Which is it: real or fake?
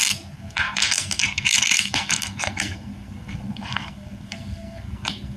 fake